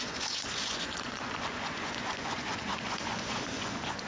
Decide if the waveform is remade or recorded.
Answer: remade